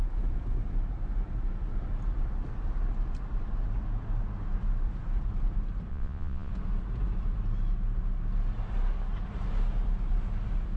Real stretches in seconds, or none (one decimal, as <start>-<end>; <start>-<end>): 0.0-5.9; 6.5-10.8